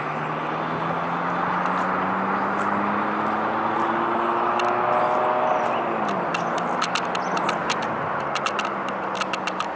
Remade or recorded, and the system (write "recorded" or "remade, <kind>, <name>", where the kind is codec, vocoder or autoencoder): recorded